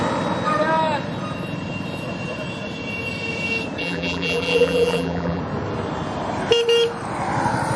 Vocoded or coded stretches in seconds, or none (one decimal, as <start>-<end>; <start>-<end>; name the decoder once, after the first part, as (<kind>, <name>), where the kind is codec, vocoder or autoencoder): 3.8-5.4 (vocoder, BigVGAN v2)